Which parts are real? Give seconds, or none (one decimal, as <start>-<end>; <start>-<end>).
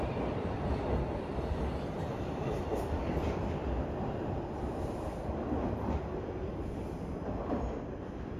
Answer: 1.3-2.1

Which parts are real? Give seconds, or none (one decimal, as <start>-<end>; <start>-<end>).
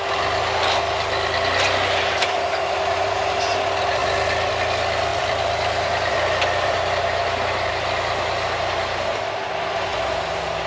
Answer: 0.0-5.1; 7.7-9.9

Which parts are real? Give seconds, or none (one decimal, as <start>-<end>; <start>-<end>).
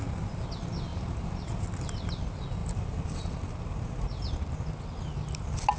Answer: 0.0-0.9; 1.6-2.6; 4.3-5.8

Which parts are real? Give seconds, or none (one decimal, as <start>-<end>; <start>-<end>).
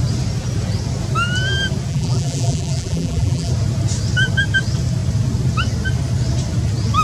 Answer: 0.0-1.9; 3.5-7.0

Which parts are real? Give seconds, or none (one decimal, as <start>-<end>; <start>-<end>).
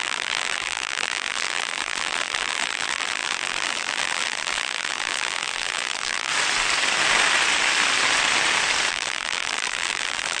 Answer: 6.3-8.9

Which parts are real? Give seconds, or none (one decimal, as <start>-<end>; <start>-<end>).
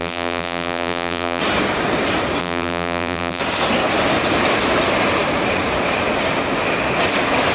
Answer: 1.4-2.4; 3.4-7.5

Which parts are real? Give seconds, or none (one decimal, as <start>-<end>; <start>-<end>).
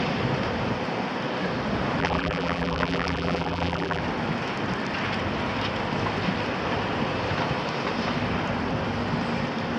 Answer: 0.0-2.0; 4.0-9.8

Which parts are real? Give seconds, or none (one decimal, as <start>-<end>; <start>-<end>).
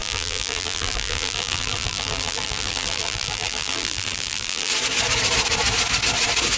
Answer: 4.7-6.6